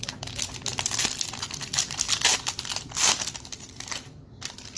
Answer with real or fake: real